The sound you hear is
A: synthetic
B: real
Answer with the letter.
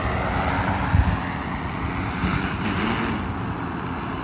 B